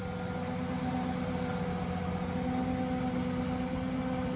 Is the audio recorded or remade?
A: recorded